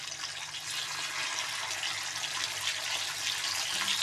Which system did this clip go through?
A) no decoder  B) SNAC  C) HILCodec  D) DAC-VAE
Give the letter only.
A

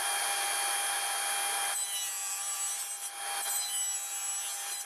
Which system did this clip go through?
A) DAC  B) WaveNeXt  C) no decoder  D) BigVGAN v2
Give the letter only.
C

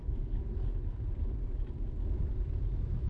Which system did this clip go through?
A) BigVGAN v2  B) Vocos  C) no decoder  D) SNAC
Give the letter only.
C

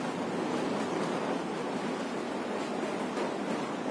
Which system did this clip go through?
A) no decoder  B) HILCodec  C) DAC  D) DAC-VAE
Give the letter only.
A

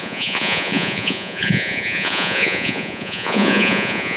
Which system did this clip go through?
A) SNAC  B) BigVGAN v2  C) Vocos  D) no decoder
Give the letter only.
C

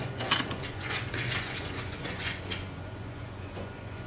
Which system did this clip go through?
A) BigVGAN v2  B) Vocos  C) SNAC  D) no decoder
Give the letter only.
B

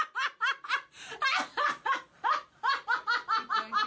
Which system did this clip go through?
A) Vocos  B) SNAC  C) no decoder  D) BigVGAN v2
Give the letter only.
C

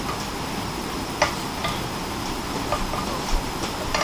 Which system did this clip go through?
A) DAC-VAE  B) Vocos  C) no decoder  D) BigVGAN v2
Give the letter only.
C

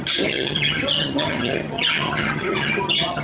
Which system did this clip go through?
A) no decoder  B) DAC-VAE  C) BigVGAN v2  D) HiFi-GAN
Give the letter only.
D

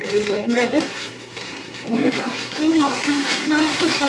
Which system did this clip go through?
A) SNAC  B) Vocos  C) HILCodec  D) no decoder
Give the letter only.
A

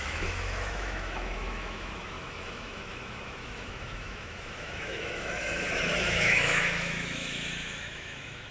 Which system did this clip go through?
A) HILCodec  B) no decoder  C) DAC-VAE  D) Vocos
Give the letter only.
C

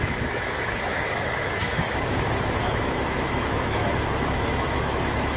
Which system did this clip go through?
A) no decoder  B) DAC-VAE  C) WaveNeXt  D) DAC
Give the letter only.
B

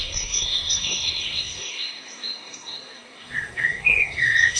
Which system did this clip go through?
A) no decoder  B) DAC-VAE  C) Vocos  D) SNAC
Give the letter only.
D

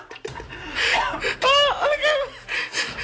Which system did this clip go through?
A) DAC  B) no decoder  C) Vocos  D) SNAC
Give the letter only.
B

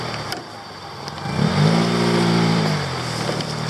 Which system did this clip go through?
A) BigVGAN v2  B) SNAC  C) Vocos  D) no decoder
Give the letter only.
A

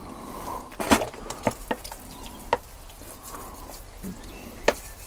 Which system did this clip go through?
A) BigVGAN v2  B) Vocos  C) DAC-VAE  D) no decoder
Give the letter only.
D